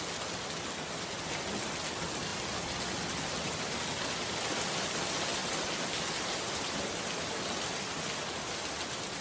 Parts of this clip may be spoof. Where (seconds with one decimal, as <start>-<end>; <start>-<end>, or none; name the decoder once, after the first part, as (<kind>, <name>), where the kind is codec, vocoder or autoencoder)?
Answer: none